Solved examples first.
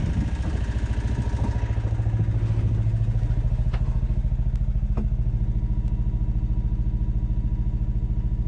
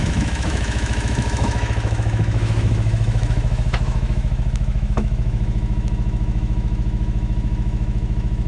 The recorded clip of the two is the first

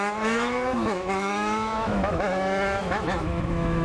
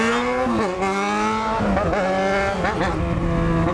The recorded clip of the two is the second